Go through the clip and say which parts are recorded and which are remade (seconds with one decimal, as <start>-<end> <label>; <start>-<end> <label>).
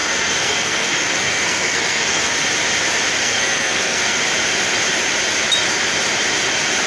0.0-2.3 remade; 2.3-3.2 recorded; 3.2-4.2 remade; 4.2-6.9 recorded